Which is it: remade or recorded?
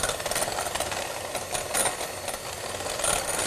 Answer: recorded